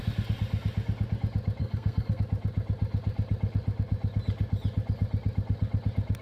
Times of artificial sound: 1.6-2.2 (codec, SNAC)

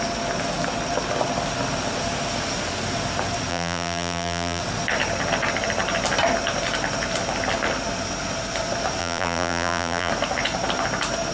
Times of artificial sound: 3.5-4.6 (vocoder, BigVGAN v2); 9.0-10.1

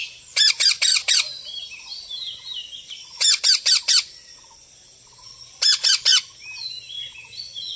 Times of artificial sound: none

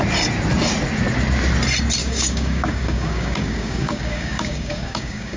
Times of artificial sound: 2.0-5.4 (codec, DAC)

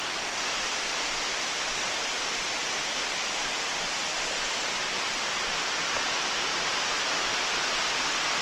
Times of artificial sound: none

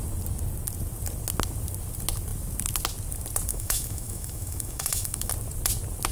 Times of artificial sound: 3.5-5.3 (autoencoder, DAC-VAE)

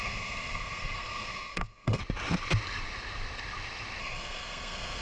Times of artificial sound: 0.0-2.0 (codec, SNAC); 4.0-5.0

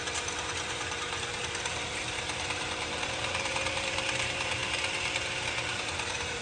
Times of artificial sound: 0.0-4.6 (vocoder, BigVGAN v2); 5.8-6.4